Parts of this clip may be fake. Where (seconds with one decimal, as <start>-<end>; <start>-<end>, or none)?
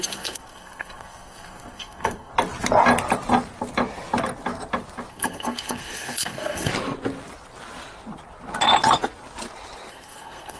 0.0-2.3; 5.1-6.7; 9.9-10.6